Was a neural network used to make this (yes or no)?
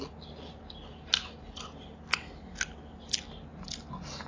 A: no